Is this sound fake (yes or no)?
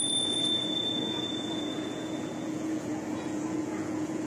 yes